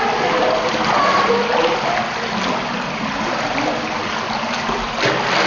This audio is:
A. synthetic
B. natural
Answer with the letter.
B